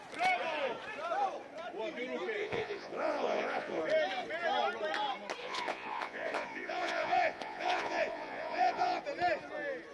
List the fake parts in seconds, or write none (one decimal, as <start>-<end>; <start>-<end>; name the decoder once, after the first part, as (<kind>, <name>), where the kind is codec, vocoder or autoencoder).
2.4-3.8 (vocoder, Vocos); 5.4-9.0